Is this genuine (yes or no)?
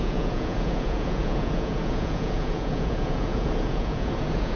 no